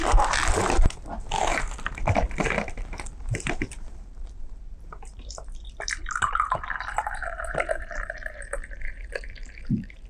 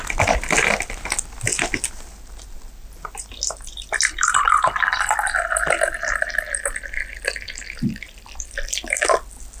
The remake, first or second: first